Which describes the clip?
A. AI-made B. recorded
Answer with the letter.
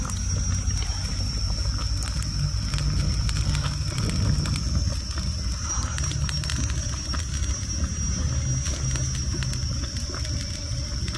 B